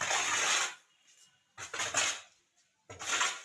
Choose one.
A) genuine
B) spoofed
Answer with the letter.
A